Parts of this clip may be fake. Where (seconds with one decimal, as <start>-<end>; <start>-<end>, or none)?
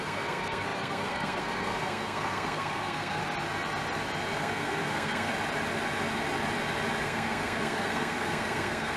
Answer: 0.0-3.2; 4.4-5.3; 7.0-9.0